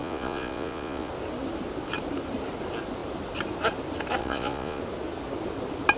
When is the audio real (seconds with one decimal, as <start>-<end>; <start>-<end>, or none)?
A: 1.1-4.2; 4.8-6.0